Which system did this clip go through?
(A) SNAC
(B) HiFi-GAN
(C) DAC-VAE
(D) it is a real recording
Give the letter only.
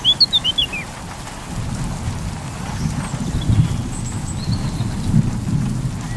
D